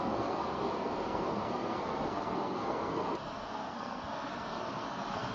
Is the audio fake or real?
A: fake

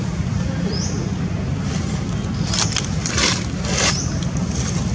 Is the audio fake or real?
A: real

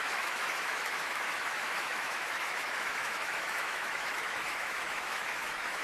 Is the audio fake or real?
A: fake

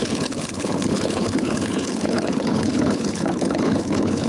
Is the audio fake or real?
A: fake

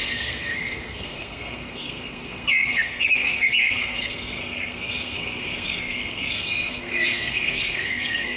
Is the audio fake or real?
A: fake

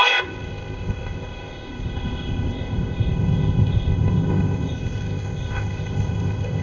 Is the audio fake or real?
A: fake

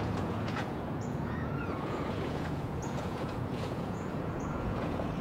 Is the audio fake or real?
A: fake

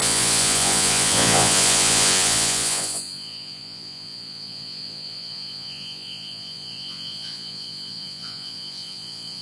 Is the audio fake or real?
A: fake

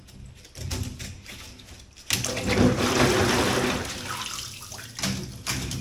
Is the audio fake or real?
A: real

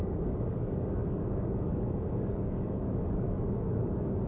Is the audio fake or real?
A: fake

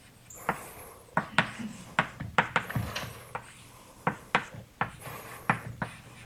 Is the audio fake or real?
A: real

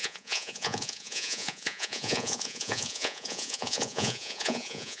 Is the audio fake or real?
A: fake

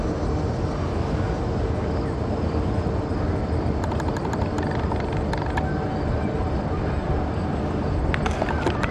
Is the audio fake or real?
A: real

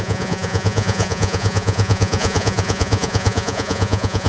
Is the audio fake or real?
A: fake